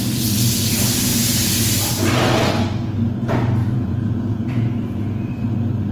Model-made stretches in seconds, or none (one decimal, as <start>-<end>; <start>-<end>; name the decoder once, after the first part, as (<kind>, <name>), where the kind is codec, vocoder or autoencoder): 1.1-1.6 (vocoder, Vocos); 3.6-5.3